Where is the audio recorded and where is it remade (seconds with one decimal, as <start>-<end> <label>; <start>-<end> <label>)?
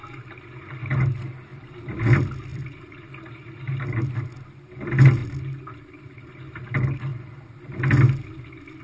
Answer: 0.0-1.5 recorded; 1.5-2.0 remade; 2.0-2.5 recorded; 2.5-3.0 remade; 3.0-7.1 recorded; 7.1-7.8 remade; 7.8-8.8 recorded